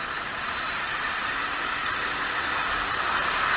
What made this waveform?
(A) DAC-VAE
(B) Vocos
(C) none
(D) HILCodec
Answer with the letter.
C